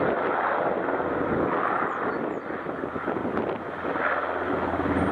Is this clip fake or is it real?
real